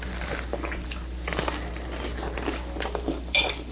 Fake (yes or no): no